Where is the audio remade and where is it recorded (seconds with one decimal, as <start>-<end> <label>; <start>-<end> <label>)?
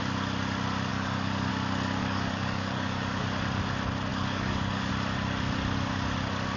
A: 0.0-0.9 recorded; 0.9-1.5 remade; 1.5-2.0 recorded; 2.0-3.2 remade; 3.2-4.1 recorded; 4.1-4.9 remade; 4.9-6.6 recorded